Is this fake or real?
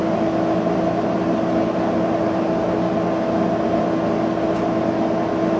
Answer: real